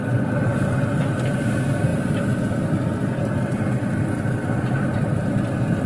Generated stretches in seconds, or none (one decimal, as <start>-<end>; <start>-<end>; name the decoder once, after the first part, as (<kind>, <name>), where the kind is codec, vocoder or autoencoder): none